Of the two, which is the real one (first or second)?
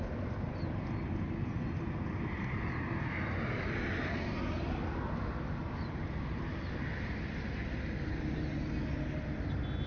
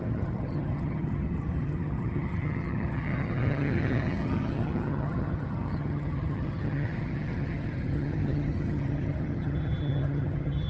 first